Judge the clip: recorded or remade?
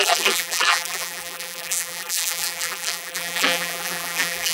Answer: remade